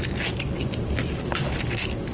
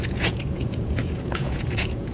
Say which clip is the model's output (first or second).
second